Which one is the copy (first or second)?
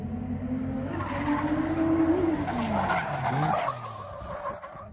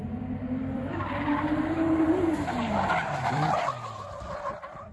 second